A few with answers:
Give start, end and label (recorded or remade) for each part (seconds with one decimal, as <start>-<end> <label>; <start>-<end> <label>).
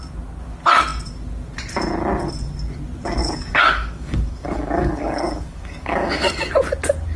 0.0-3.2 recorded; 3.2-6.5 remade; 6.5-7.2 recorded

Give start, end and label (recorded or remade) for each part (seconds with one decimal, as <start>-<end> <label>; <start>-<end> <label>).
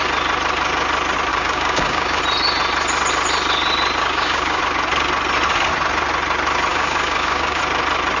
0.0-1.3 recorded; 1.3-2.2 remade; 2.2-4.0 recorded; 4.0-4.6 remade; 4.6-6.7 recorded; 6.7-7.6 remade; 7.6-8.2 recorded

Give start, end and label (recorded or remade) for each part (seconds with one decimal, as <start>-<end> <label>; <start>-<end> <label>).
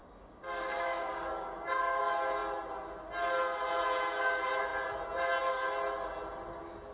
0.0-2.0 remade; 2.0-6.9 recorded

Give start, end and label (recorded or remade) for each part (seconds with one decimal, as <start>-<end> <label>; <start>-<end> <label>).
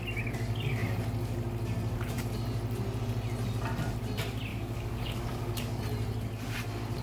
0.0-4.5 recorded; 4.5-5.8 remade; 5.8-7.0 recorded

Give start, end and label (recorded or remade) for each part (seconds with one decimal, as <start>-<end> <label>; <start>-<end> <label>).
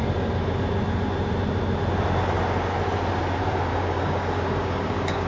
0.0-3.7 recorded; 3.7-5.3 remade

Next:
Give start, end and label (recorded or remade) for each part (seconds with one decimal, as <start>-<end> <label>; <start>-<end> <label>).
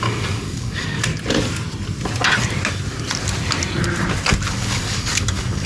0.0-1.1 remade; 1.1-4.5 recorded; 4.5-5.7 remade